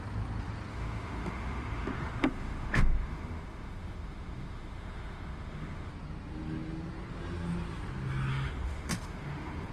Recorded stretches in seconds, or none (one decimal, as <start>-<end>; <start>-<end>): 0.0-0.7; 5.9-8.3